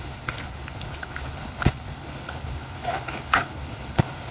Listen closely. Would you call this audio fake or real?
fake